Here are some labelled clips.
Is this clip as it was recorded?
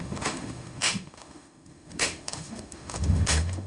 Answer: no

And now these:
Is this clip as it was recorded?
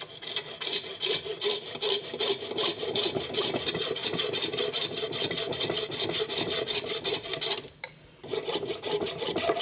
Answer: yes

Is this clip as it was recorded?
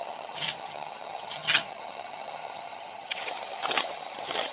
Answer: no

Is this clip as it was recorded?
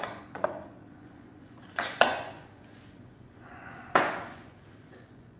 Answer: no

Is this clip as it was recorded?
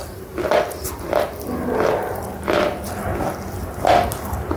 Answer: yes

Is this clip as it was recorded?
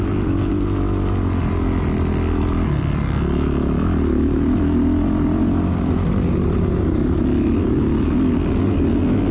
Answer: yes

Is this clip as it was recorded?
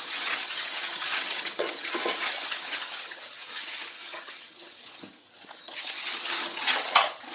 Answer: no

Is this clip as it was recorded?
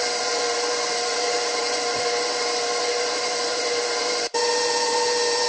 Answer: no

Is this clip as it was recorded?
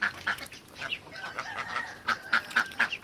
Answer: yes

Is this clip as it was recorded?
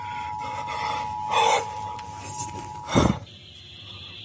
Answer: yes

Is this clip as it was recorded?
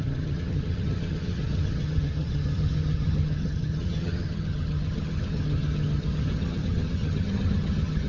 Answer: no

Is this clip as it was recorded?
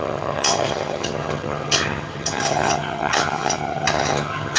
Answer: no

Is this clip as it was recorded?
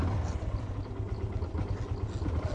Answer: yes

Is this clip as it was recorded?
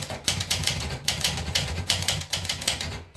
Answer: no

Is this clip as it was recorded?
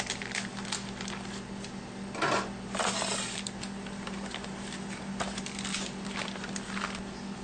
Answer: yes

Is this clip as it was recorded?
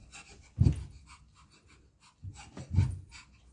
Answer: yes